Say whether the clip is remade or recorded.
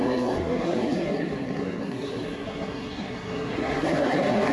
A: remade